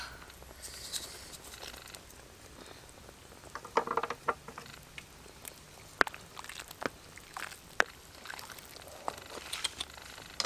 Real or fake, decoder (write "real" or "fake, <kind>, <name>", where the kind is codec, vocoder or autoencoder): real